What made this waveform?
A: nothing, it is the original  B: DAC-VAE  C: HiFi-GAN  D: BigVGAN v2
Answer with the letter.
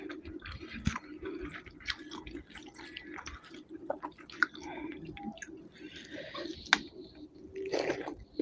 D